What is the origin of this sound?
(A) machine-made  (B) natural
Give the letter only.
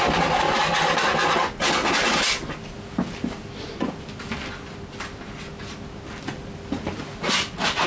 B